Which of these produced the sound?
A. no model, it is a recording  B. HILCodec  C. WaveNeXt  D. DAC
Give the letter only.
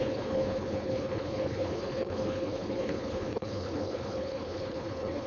B